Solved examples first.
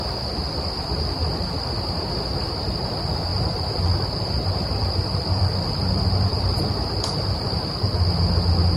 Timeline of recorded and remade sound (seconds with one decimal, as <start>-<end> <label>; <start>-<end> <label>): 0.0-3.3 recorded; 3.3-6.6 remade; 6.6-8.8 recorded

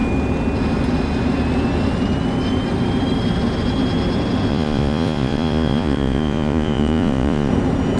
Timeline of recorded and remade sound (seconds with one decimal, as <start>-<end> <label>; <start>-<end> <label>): 0.0-4.5 recorded; 4.5-7.5 remade; 7.5-8.0 recorded

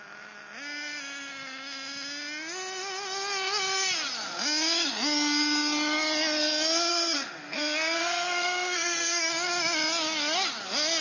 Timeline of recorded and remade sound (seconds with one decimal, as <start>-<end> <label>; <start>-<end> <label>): 0.0-6.9 recorded; 6.9-9.3 remade; 9.3-11.0 recorded

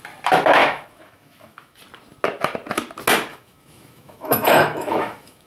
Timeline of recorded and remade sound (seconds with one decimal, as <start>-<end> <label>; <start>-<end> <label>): 0.0-0.6 recorded; 0.6-1.8 remade; 1.8-3.3 recorded; 3.3-5.5 remade